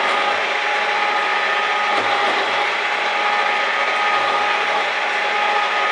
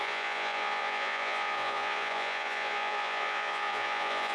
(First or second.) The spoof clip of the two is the second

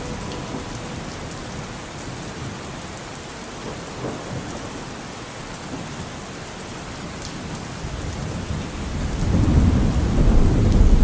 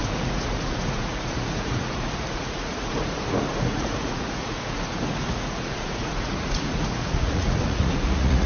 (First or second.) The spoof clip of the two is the second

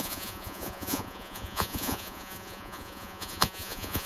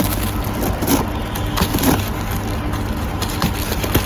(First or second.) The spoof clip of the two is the first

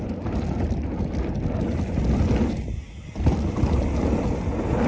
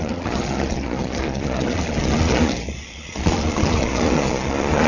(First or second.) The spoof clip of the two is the second